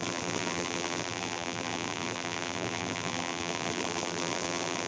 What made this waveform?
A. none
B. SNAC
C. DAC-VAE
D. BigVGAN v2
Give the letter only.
D